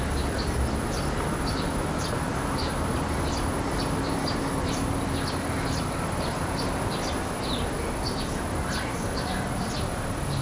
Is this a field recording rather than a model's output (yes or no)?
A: no